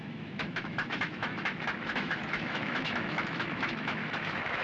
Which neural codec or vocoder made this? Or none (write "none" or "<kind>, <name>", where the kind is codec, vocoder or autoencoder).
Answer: autoencoder, DAC-VAE